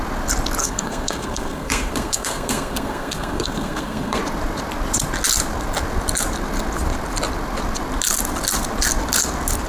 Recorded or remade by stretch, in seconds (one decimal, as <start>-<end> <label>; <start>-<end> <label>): 0.0-0.6 recorded; 0.6-4.2 remade; 4.2-9.7 recorded